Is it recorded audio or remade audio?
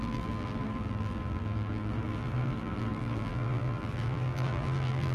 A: remade